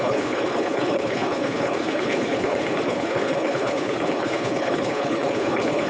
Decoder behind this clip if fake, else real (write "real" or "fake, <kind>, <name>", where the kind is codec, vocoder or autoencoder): fake, codec, HILCodec